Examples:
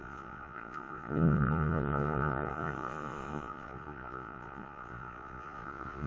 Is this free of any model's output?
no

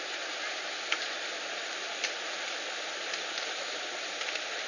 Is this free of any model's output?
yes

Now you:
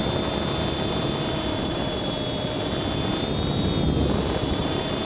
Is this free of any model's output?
yes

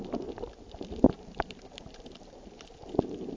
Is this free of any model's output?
yes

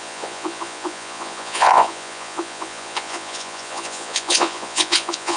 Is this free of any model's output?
no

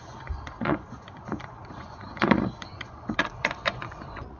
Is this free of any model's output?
no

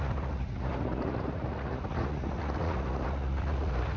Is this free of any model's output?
no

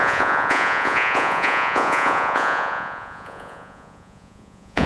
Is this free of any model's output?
no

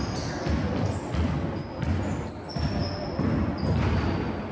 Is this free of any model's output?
yes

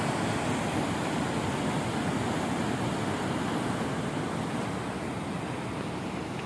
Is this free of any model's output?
yes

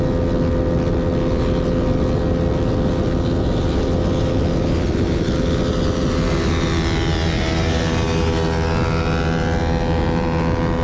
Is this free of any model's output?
yes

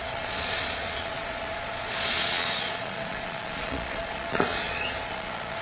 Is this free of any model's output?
no